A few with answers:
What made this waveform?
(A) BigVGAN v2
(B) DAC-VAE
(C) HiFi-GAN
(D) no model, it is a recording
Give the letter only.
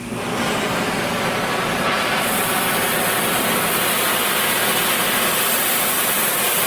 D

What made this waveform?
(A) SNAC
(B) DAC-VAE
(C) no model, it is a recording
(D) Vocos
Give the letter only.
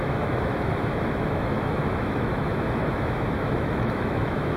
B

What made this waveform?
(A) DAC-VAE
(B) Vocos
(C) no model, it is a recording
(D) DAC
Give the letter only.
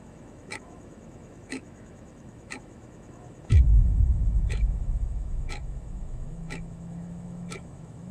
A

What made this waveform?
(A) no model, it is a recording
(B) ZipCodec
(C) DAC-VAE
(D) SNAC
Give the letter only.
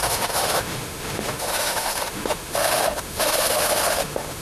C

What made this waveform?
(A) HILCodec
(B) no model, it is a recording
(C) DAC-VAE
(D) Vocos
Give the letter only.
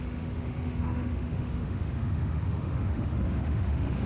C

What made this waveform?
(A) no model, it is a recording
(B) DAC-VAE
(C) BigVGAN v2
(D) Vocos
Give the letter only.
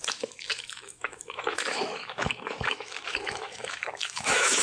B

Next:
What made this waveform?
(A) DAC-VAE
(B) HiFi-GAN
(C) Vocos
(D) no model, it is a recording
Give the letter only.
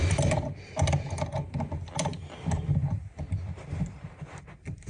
D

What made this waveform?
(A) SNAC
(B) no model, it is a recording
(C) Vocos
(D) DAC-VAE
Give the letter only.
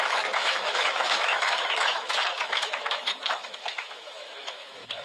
D